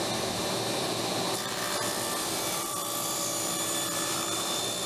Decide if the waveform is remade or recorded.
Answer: remade